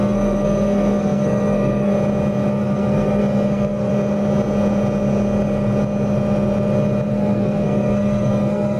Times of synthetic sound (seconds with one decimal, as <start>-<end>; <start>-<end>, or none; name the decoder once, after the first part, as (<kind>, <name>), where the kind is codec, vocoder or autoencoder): 0.0-1.9 (codec, SNAC); 2.5-3.9; 7.1-8.8